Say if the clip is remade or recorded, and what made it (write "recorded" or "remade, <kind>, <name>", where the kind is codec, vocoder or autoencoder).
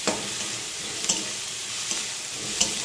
remade, vocoder, BigVGAN v2